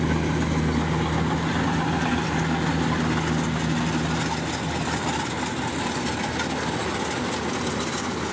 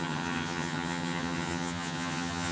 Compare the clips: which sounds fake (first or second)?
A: second